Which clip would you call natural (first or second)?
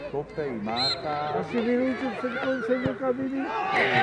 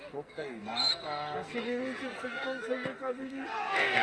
first